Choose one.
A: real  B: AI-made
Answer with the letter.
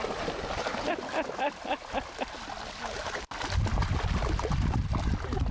A